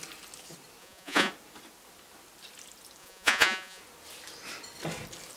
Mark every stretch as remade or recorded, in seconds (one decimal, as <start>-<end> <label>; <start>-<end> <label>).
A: 0.0-0.8 recorded; 0.8-1.3 remade; 1.3-3.0 recorded; 3.0-3.8 remade; 3.8-5.4 recorded